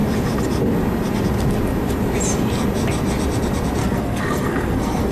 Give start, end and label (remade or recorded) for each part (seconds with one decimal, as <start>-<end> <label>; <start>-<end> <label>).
0.0-3.8 recorded; 3.8-5.1 remade